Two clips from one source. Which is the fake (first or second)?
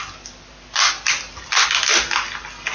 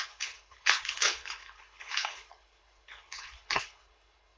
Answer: second